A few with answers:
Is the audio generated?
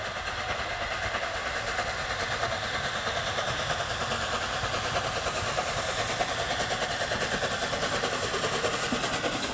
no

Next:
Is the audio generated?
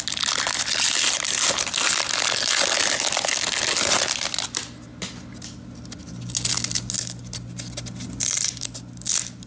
no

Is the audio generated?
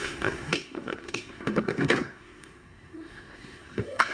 yes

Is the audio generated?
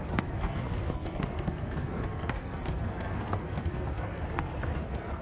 yes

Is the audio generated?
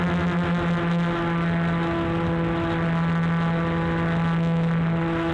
no